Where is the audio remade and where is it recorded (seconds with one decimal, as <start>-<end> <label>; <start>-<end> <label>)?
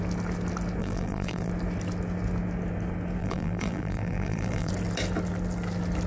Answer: 0.0-0.8 recorded; 0.8-1.5 remade; 1.5-3.2 recorded; 3.2-4.7 remade; 4.7-6.1 recorded